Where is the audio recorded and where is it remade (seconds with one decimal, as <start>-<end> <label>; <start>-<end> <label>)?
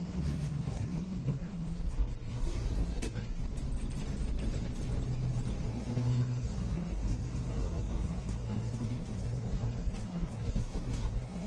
0.0-3.4 remade; 3.4-5.7 recorded; 5.7-11.5 remade